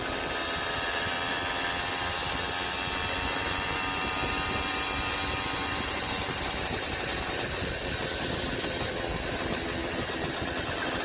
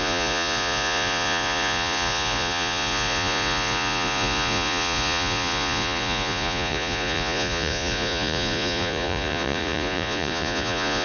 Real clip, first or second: first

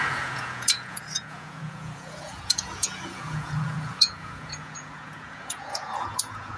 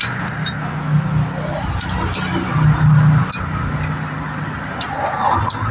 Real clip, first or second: second